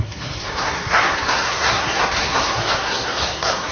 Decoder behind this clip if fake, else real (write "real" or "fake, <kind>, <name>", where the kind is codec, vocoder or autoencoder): fake, codec, SNAC